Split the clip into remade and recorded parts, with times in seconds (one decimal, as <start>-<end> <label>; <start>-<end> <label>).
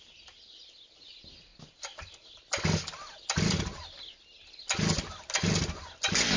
0.0-6.4 recorded